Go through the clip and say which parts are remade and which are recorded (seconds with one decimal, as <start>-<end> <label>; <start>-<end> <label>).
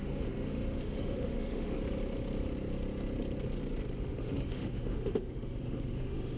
0.0-1.8 remade; 1.8-4.0 recorded; 4.0-6.4 remade